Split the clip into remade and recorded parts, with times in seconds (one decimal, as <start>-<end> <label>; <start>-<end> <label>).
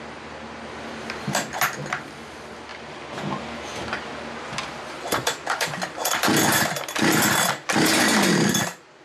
0.0-9.0 recorded